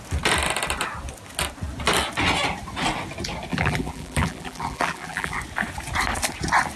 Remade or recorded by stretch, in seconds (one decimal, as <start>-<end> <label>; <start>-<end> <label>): 0.0-3.5 recorded; 3.5-5.4 remade; 5.4-6.8 recorded